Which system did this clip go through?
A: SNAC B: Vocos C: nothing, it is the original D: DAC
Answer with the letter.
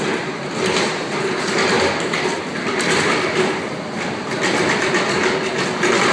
C